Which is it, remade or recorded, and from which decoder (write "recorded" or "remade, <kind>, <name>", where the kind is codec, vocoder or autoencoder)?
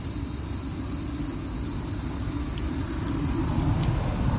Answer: recorded